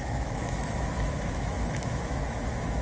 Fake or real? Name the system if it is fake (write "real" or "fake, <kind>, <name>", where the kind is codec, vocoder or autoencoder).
fake, autoencoder, DAC-VAE